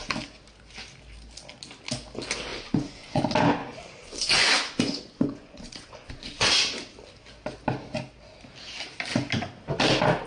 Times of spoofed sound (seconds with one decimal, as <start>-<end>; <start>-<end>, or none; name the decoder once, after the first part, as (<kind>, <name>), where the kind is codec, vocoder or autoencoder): 2.5-3.2 (vocoder, Vocos); 3.6-6.5